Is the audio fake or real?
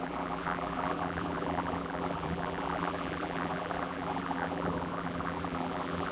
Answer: fake